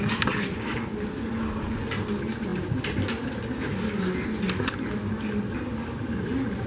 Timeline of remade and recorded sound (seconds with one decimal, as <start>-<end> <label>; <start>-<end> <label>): 0.0-6.7 recorded